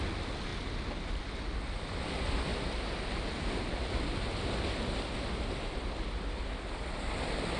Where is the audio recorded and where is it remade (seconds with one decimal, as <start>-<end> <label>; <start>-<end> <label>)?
0.0-7.6 recorded